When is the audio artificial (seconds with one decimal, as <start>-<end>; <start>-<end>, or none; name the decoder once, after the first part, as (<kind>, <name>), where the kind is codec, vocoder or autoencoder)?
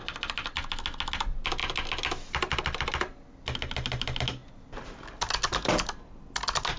none